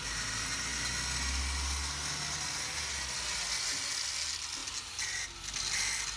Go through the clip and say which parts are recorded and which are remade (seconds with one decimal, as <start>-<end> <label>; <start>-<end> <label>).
0.0-6.2 recorded